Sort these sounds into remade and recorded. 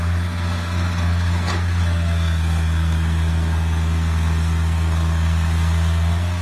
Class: remade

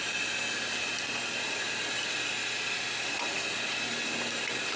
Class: recorded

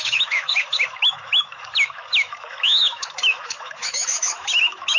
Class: remade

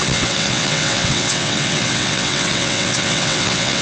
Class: remade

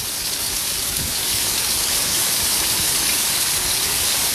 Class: remade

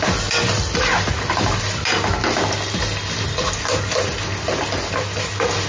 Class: recorded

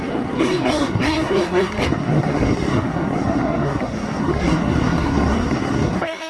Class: remade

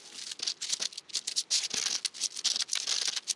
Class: recorded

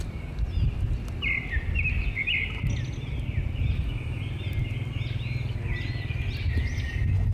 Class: recorded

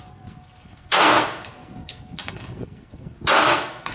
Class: remade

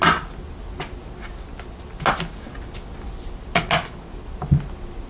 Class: recorded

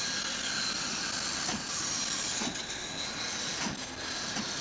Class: recorded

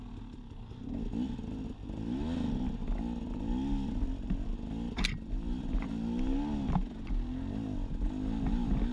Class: recorded